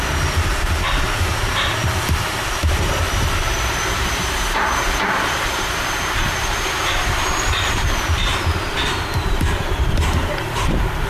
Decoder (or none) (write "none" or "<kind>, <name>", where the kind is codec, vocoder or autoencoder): vocoder, BigVGAN v2